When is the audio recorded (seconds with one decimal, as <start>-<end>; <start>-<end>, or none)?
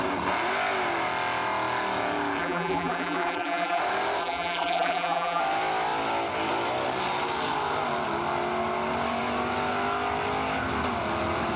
0.0-2.4; 3.8-4.2; 5.4-11.6